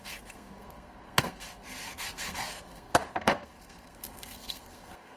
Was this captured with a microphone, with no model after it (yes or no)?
no